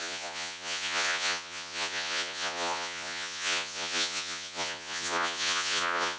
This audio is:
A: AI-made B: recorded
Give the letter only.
A